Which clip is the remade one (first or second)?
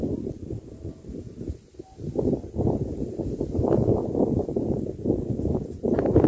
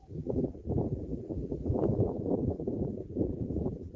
second